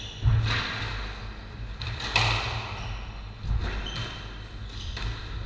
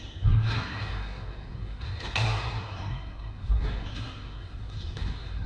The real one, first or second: first